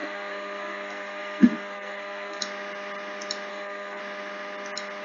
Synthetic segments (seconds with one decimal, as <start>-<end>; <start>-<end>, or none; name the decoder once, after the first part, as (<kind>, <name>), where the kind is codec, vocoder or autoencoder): 0.0-2.4 (codec, SNAC); 3.5-4.0